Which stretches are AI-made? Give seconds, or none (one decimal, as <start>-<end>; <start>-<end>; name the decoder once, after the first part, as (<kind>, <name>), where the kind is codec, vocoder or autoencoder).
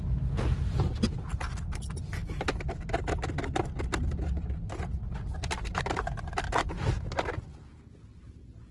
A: none